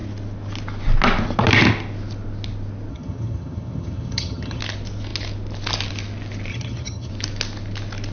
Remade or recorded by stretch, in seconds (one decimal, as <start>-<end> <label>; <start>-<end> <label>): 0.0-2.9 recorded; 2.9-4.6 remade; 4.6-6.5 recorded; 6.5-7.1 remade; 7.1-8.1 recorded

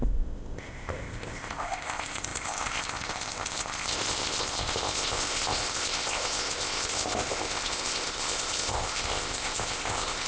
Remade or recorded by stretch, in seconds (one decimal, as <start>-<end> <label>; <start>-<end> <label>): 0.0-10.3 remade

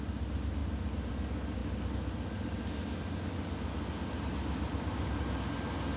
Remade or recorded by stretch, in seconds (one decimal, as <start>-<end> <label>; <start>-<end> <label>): 0.0-6.0 recorded

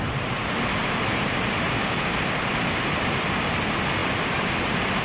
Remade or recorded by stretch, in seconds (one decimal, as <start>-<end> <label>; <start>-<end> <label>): 0.0-5.0 recorded

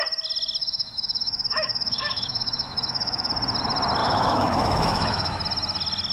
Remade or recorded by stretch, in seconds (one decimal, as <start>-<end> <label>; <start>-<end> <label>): 0.0-0.6 recorded; 0.6-3.3 remade; 3.3-4.0 recorded; 4.0-5.4 remade; 5.4-6.1 recorded

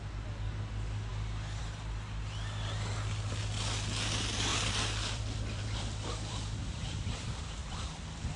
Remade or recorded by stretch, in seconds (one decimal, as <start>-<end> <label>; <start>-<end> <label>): 0.0-4.5 recorded; 4.5-7.1 remade; 7.1-7.6 recorded; 7.6-8.4 remade

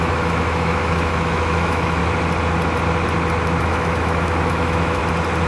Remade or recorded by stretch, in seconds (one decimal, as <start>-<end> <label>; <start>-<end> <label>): 0.0-2.0 remade; 2.0-3.6 recorded; 3.6-5.0 remade; 5.0-5.5 recorded

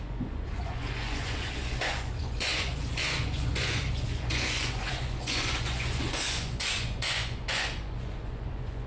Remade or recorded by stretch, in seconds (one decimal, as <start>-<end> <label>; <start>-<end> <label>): 0.0-8.9 remade